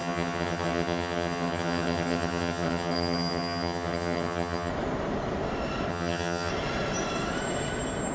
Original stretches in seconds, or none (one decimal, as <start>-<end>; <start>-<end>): 4.7-5.9; 6.5-8.1